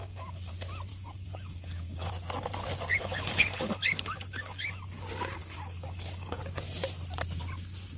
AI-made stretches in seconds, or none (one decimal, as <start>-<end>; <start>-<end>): 0.0-0.5; 0.9-2.1; 2.9-4.7; 5.4-6.4